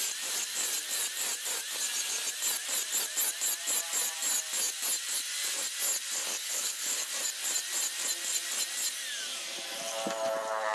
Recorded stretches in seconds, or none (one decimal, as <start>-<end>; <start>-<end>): 0.0-6.3; 7.1-10.7